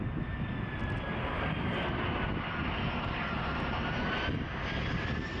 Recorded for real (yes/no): yes